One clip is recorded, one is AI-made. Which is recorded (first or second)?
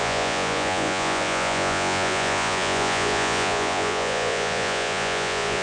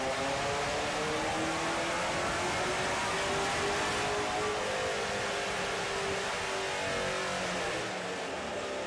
second